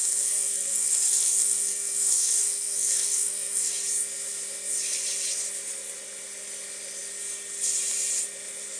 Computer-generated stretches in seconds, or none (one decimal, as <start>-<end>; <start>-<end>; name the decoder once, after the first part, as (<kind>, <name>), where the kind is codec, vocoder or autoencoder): 0.0-3.7 (codec, SNAC)